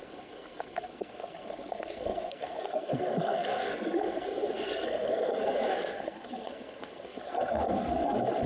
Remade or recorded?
remade